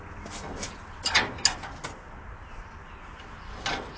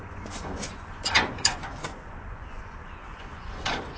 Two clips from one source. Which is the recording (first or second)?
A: first